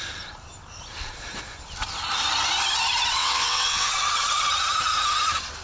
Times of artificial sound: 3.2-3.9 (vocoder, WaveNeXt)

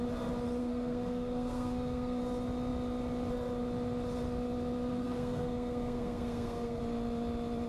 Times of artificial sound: 0.6-2.2 (codec, SNAC); 4.9-6.8

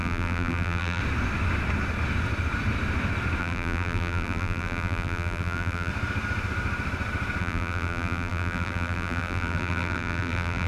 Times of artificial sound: 0.0-1.0 (vocoder, BigVGAN v2); 3.4-5.9; 7.4-10.7

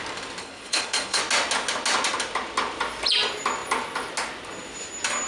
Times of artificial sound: 0.4-1.2 (codec, HILCodec)

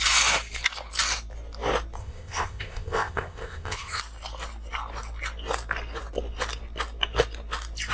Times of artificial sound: 2.0-4.0 (codec, ZipCodec)

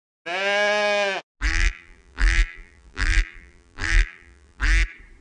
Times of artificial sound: 1.5-4.6 (vocoder, BigVGAN v2)

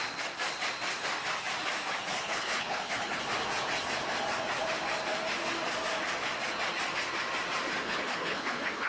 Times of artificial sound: 2.1-3.2 (codec, HILCodec); 7.8-8.9